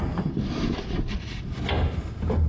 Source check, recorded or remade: recorded